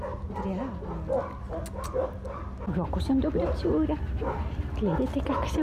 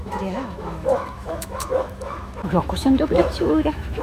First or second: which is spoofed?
second